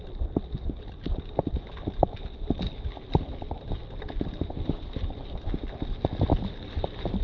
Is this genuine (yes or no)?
yes